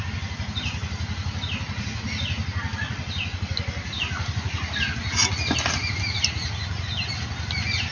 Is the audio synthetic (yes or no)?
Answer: no